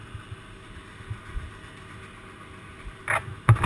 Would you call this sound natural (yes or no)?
yes